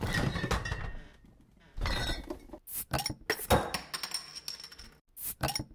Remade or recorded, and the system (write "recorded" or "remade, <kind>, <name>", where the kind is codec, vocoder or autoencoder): recorded